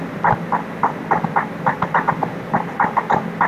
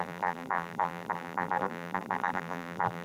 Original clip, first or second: first